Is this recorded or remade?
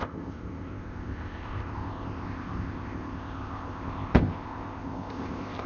remade